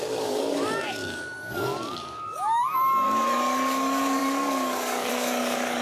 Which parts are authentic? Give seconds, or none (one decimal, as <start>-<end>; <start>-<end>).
none